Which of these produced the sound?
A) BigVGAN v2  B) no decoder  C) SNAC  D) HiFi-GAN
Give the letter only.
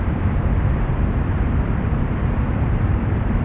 A